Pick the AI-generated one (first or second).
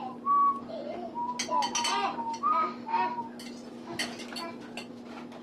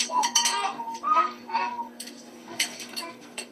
second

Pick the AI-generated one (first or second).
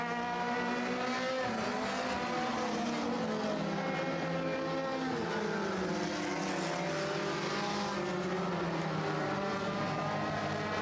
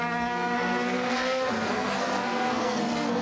second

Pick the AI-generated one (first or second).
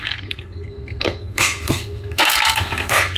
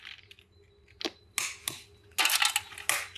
first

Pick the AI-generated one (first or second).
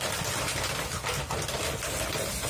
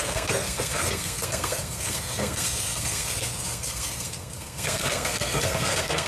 second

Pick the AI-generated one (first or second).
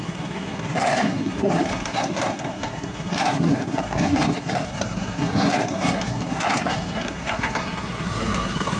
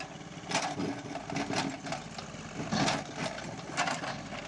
first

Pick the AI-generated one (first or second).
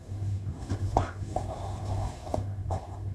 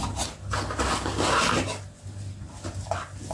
first